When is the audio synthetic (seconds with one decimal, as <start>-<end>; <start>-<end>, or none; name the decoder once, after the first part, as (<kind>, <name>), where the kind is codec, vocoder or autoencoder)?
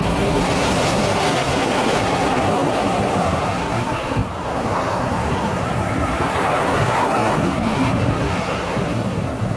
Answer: 0.0-9.6 (codec, SNAC)